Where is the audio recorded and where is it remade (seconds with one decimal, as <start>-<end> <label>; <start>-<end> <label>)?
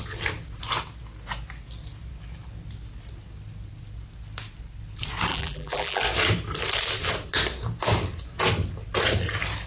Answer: 0.0-5.3 recorded; 5.3-6.0 remade; 6.0-9.7 recorded